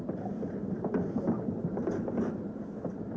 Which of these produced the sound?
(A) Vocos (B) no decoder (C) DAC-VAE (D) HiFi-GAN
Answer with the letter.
B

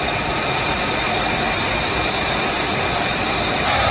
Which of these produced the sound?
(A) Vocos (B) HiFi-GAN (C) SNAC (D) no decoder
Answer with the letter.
D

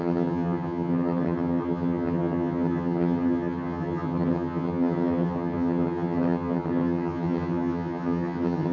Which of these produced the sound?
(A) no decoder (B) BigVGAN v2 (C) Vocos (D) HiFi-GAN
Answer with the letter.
D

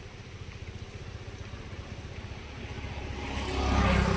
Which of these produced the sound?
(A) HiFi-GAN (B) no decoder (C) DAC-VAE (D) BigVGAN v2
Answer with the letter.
B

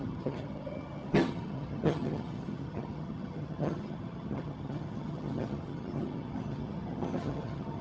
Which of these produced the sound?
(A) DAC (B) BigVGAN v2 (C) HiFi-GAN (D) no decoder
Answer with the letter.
C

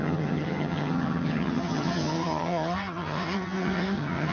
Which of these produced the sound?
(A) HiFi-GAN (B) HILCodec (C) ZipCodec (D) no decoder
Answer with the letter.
A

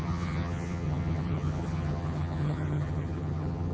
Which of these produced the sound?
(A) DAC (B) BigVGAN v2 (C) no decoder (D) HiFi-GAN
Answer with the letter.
D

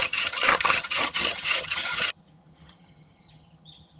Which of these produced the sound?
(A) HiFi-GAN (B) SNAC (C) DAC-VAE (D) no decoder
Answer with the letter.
A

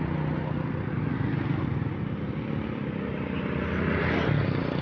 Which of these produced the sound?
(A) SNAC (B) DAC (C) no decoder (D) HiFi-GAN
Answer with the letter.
C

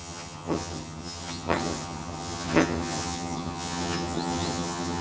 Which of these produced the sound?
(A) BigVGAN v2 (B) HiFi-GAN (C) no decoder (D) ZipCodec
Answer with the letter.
B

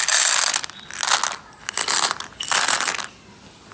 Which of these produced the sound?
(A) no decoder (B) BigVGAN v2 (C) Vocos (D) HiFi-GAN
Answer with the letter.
A